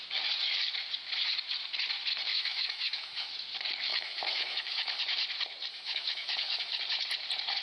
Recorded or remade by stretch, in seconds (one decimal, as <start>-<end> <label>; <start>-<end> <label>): 0.0-2.3 recorded; 2.3-3.3 remade; 3.3-3.9 recorded; 3.9-5.0 remade; 5.0-5.7 recorded; 5.7-6.8 remade; 6.8-7.6 recorded